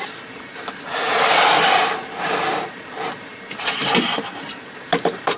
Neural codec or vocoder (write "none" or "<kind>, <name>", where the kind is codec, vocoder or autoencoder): vocoder, BigVGAN v2